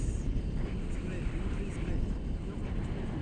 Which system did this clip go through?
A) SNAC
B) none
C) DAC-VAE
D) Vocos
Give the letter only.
B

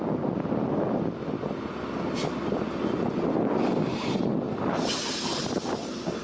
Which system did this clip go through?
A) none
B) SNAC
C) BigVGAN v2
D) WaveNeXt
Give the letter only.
A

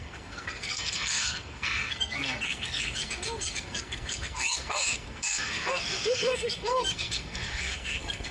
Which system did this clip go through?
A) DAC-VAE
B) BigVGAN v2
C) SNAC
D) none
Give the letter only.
C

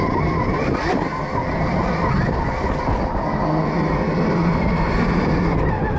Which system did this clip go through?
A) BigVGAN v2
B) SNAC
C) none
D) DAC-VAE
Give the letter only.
C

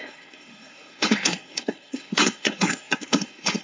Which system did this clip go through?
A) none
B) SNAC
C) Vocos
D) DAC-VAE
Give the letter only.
B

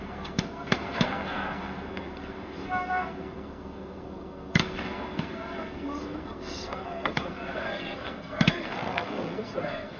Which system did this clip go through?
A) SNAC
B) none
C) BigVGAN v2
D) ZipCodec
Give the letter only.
A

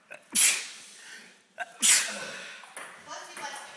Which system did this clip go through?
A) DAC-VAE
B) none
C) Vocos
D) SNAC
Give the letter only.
B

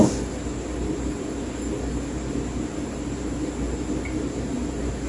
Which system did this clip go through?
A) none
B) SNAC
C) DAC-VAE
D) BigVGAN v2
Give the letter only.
A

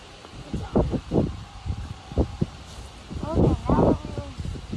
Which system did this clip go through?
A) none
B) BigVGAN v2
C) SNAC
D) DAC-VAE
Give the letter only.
A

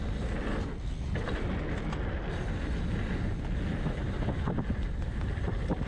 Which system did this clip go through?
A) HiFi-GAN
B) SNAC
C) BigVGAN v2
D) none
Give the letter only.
D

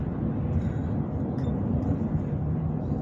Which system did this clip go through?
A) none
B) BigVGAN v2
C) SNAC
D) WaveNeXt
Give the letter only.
A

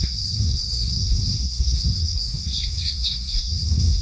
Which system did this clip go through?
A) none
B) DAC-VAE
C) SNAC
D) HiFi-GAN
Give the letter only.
C